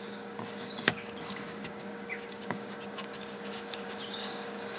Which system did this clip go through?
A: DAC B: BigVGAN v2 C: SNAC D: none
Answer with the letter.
A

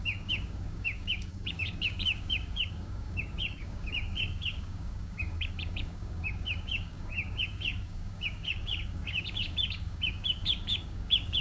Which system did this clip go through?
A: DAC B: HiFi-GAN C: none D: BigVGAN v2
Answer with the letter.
A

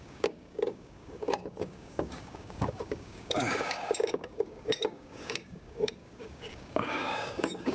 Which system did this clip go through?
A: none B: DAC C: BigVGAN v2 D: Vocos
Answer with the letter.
B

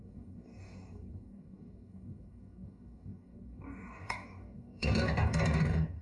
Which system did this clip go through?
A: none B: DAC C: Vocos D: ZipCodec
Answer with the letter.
B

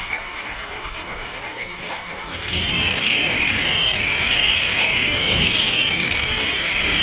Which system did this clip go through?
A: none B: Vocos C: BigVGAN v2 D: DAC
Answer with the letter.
D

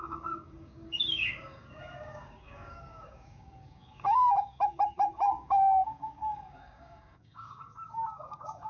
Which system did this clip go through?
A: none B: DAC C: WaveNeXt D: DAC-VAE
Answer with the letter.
B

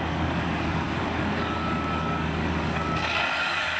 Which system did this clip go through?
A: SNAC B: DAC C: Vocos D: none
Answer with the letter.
B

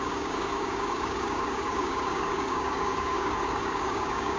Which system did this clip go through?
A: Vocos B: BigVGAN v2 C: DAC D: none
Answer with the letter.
C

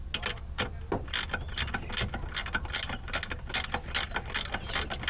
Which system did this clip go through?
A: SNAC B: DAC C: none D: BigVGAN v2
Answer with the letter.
C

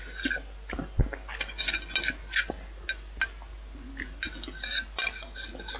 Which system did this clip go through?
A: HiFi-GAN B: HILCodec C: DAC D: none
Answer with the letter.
D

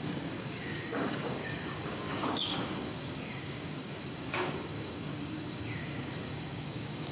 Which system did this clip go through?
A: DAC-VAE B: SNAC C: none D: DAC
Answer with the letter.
D